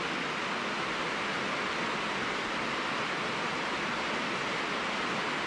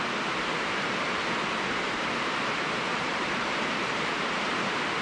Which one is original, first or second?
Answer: first